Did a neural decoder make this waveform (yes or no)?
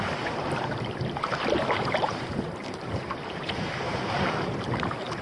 yes